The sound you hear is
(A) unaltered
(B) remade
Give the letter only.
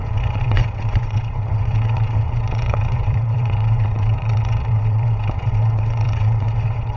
B